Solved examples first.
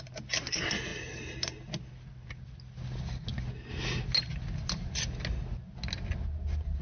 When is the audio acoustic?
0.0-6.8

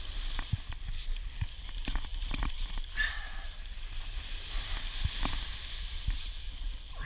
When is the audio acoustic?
0.0-7.1